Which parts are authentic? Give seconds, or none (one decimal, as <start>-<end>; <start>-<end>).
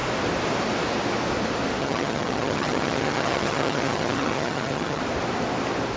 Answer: 0.0-1.8; 5.0-6.0